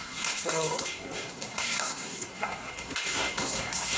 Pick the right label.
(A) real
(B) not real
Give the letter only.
B